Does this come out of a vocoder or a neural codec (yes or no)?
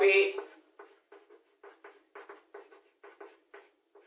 no